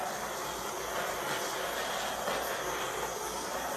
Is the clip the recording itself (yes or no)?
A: yes